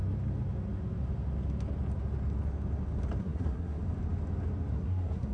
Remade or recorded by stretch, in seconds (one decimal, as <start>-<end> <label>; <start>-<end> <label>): 0.0-3.2 recorded; 3.2-3.8 remade; 3.8-4.7 recorded; 4.7-5.3 remade